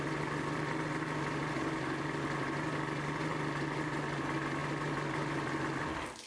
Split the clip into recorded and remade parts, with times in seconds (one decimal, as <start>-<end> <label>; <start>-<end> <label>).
0.0-6.3 recorded